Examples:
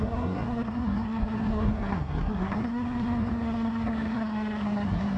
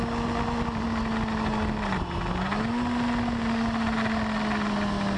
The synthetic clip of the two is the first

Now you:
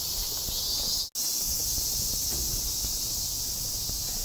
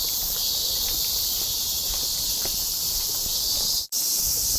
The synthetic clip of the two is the second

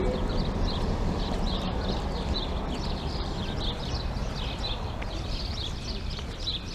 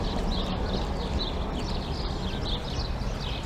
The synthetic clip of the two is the first